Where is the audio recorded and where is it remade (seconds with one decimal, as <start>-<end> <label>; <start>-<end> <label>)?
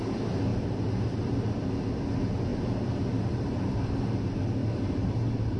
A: 0.0-0.5 recorded; 0.5-1.7 remade; 1.7-2.5 recorded; 2.5-4.0 remade; 4.0-4.6 recorded; 4.6-5.6 remade